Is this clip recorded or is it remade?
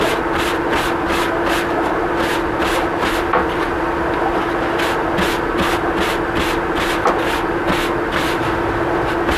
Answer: recorded